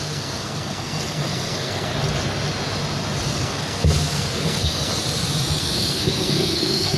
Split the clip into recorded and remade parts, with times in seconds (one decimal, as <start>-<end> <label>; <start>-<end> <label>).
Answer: 0.0-1.9 remade; 1.9-3.3 recorded; 3.3-4.9 remade; 4.9-5.6 recorded; 5.6-7.0 remade

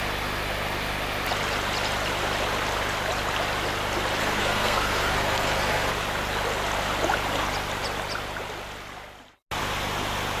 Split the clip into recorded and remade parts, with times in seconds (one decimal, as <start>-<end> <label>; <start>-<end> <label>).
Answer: 0.0-4.2 recorded; 4.2-5.9 remade; 5.9-10.4 recorded